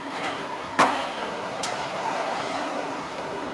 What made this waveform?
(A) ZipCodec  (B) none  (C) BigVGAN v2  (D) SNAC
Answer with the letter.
D